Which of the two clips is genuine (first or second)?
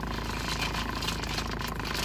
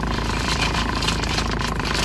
first